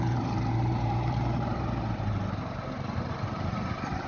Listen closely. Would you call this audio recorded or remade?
remade